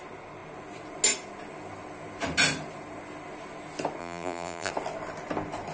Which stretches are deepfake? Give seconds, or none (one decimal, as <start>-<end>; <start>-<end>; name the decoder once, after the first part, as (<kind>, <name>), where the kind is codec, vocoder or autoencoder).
4.0-4.7 (vocoder, BigVGAN v2)